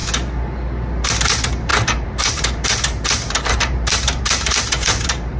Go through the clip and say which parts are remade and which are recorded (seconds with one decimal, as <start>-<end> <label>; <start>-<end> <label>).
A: 0.0-1.1 recorded; 1.1-5.4 remade